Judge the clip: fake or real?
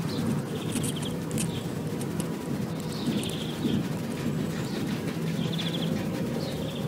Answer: real